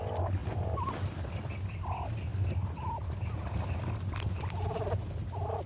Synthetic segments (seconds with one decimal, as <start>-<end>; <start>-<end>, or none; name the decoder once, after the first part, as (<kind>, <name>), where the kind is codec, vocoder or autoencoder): none

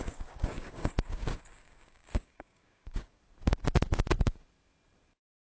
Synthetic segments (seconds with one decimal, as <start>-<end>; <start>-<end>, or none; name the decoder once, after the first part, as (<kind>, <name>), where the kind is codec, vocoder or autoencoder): 0.0-3.2 (codec, DAC)

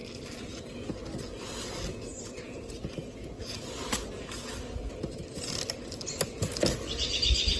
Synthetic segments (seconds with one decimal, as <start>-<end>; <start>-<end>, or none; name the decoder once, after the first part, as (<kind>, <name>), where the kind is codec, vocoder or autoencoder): none

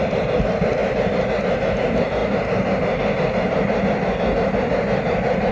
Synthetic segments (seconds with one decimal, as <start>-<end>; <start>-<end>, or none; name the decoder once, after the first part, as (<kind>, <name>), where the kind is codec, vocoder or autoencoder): none

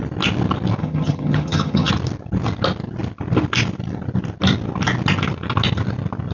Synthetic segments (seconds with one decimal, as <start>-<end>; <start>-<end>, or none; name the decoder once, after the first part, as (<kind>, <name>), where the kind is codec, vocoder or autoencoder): 0.8-1.9 (vocoder, HiFi-GAN)

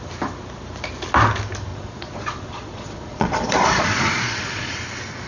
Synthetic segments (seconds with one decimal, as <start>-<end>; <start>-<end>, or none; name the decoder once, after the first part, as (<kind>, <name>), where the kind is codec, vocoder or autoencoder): 1.7-4.7 (vocoder, Vocos)

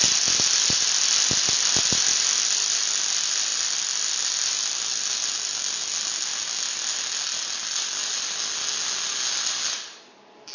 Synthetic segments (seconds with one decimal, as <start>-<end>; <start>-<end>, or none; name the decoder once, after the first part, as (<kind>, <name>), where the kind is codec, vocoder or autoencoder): 2.1-2.8 (vocoder, BigVGAN v2); 3.5-5.6